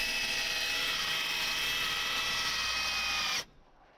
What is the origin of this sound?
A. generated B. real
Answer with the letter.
B